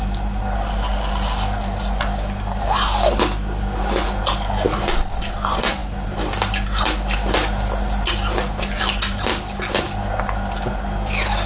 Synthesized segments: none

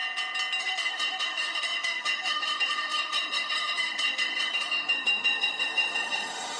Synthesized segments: 0.6-6.6 (autoencoder, DAC-VAE)